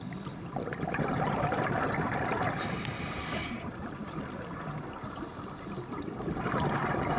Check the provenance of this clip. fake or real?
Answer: real